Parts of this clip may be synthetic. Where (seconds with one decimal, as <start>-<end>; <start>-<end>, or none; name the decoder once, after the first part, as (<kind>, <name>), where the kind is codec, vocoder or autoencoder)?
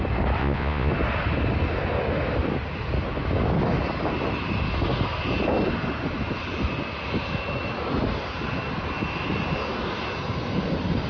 0.4-0.9 (vocoder, Vocos)